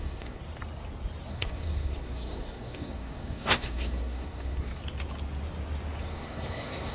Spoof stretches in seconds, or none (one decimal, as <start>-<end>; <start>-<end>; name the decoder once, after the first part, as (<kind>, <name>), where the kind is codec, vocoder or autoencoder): 0.0-0.4 (codec, SNAC); 1.3-4.8; 6.0-6.9

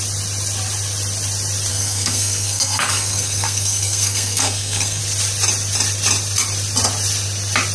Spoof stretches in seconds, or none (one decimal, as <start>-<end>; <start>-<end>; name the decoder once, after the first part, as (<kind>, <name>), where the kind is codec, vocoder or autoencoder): 1.7-5.0 (codec, SNAC)

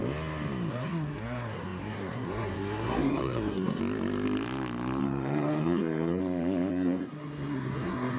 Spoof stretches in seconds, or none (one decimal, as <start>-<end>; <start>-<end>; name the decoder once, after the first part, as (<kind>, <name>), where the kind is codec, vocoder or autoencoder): 0.7-3.8 (codec, SNAC); 5.0-6.2; 6.7-8.2